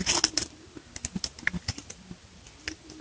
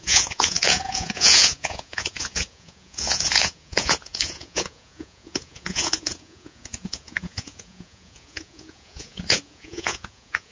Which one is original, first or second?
first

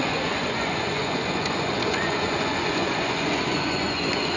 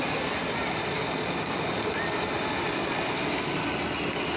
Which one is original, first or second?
second